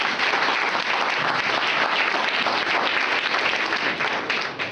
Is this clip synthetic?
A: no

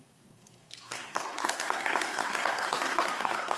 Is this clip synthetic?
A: yes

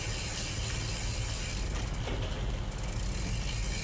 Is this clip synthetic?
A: no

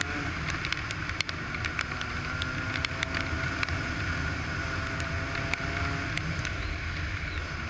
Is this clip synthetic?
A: no